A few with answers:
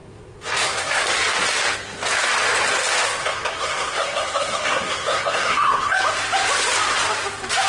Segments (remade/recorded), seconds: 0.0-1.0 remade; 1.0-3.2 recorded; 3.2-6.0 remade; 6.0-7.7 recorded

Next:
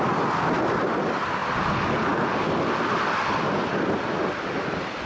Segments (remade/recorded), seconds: 0.0-5.1 recorded

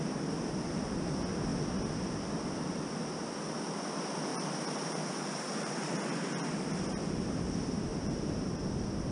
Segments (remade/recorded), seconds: 0.0-4.3 recorded; 4.3-5.7 remade; 5.7-7.9 recorded; 7.9-8.7 remade; 8.7-9.1 recorded